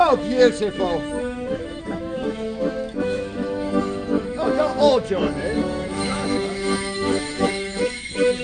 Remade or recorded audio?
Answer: remade